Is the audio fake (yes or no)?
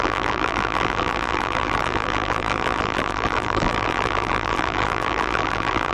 yes